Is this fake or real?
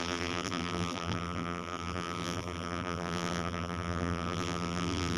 fake